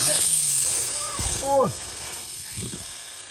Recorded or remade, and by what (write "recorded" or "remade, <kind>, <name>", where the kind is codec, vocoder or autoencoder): remade, codec, SNAC